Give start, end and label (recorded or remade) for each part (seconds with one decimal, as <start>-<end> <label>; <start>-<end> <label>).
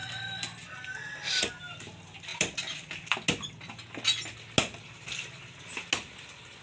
0.0-6.6 recorded